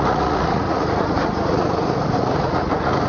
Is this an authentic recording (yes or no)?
no